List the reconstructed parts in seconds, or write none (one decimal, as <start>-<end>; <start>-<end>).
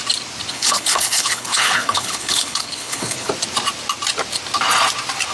0.5-3.3